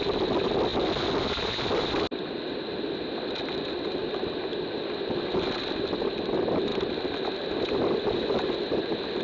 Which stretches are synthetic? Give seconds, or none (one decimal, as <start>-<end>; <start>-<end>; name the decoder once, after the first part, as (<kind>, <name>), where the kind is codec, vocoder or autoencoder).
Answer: none